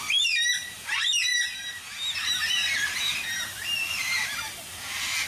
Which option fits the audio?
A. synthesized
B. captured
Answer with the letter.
B